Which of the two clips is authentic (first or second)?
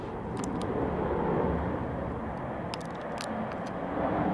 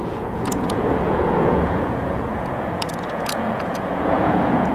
first